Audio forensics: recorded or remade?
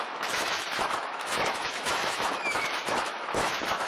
remade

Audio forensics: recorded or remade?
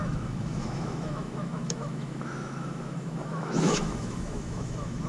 remade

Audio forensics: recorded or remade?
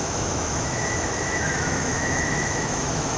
remade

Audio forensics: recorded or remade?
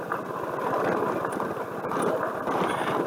recorded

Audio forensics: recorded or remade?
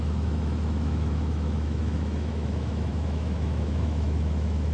remade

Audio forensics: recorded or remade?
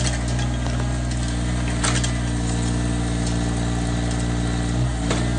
recorded